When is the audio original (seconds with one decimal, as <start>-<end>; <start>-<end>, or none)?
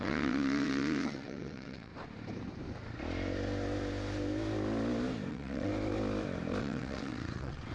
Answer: 1.9-5.3; 5.7-6.6